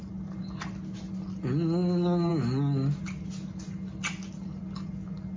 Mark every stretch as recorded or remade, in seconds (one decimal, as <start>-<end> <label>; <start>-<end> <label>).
0.0-5.4 recorded